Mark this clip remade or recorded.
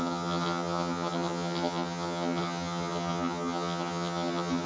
remade